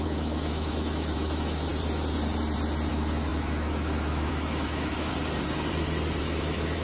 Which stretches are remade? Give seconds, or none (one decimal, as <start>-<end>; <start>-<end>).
0.0-1.7; 2.9-5.1; 6.2-6.8